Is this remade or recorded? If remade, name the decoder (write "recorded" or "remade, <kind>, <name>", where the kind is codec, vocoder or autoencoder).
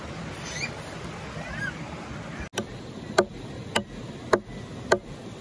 recorded